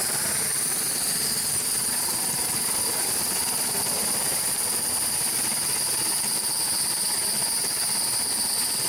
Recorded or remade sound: remade